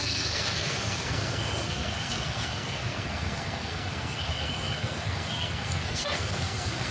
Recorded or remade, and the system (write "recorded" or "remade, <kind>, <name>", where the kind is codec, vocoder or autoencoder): remade, codec, SNAC